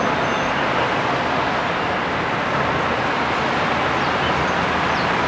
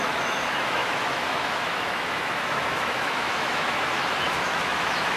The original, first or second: first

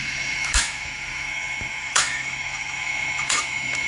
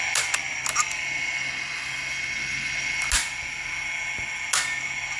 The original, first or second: second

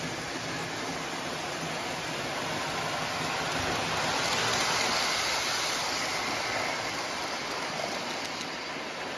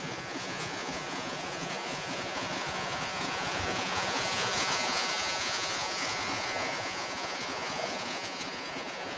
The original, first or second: first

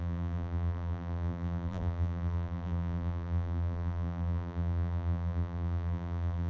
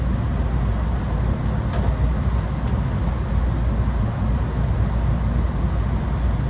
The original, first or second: second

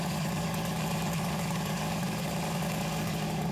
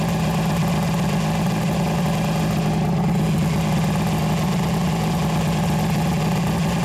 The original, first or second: second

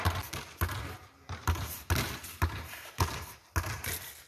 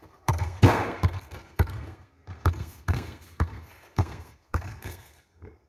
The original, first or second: first